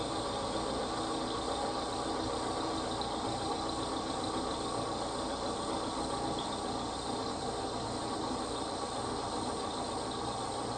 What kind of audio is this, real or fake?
real